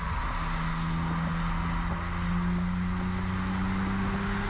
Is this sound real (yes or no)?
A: yes